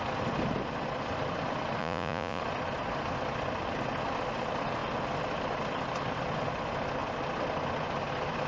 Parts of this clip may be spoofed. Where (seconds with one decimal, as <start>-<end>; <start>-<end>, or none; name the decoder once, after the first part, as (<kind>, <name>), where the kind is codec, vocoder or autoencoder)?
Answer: 1.8-2.4 (vocoder, Vocos)